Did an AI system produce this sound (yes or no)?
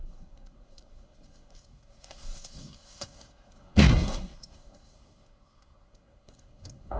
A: yes